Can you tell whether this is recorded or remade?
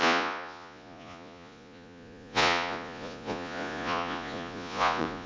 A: remade